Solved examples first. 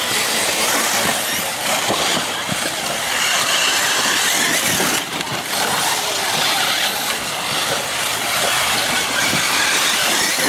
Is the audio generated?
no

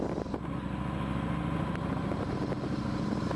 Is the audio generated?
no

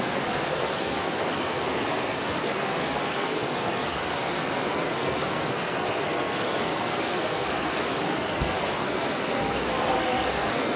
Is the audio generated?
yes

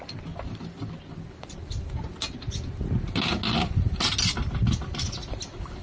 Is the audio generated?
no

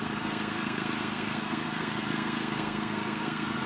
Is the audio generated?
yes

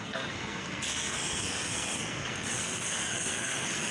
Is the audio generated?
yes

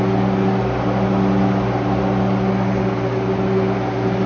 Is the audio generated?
no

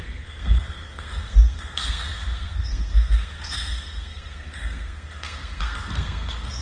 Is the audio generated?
yes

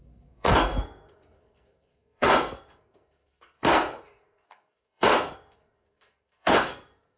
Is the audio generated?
yes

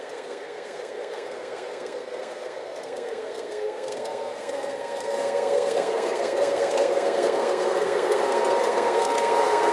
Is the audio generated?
yes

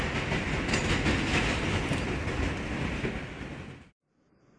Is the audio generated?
no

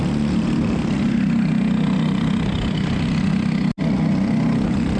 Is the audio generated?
no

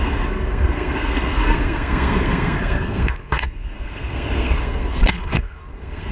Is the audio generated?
yes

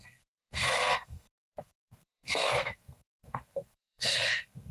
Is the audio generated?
yes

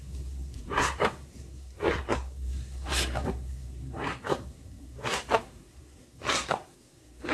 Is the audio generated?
yes